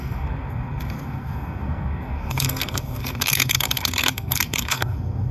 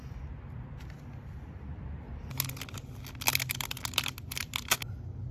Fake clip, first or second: first